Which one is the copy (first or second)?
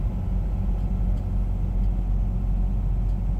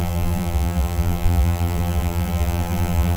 second